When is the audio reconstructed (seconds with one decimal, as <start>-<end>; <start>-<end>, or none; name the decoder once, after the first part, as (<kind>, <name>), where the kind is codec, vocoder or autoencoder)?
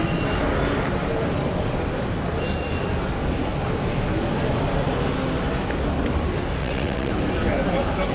6.6-7.1 (vocoder, WaveNeXt)